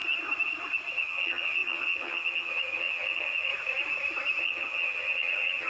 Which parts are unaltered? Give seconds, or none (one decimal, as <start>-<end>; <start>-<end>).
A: 0.0-1.0; 3.5-4.4